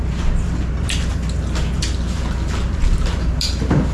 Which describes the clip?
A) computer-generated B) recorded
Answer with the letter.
B